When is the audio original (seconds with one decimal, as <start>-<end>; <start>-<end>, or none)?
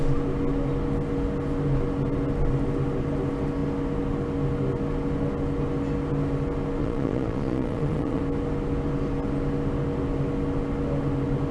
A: 0.0-6.8; 8.2-11.5